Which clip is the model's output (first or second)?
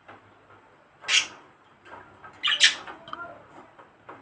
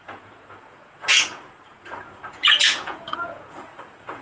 second